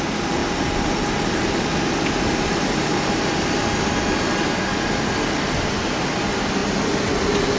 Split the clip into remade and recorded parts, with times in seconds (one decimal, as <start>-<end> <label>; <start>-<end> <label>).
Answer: 0.0-7.6 recorded